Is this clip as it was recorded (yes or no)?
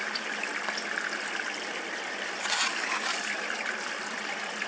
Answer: yes